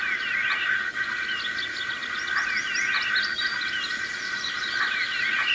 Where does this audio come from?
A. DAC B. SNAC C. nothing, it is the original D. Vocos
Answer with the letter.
C